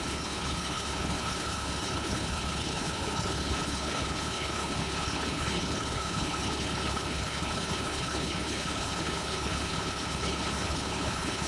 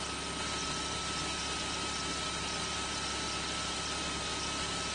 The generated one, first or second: first